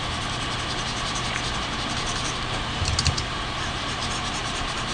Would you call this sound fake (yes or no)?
yes